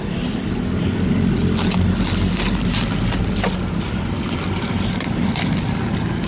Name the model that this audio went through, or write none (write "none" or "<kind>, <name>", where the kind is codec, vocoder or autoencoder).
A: none